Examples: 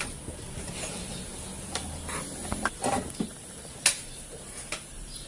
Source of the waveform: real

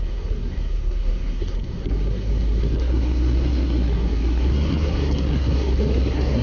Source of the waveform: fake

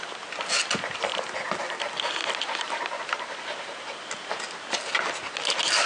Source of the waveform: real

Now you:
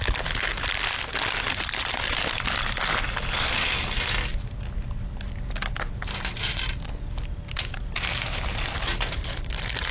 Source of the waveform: real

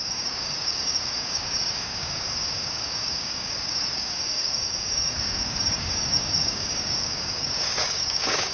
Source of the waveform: fake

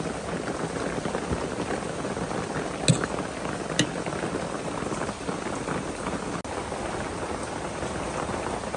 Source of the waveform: real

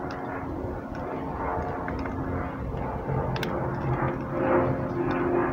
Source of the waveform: real